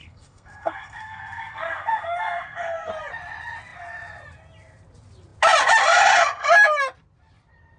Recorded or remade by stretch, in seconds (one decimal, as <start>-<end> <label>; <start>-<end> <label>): 0.0-2.9 remade; 2.9-7.8 recorded